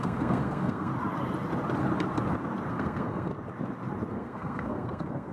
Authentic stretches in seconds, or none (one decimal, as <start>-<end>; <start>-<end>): 0.9-2.7; 3.3-4.1